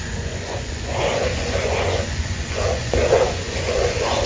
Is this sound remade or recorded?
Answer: remade